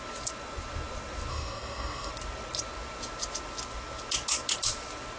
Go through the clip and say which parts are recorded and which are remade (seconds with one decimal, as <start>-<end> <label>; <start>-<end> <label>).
0.0-1.3 recorded; 1.3-2.1 remade; 2.1-5.2 recorded